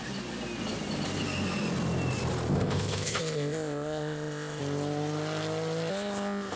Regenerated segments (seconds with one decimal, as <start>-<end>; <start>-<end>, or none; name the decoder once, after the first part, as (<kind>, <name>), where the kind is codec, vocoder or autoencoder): 2.5-4.6 (codec, ZipCodec); 5.9-6.6